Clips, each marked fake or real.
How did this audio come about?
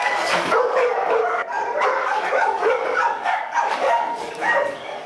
fake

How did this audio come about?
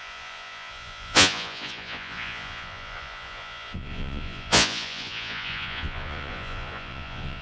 fake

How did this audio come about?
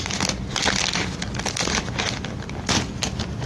real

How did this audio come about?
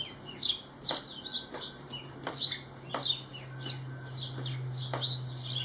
real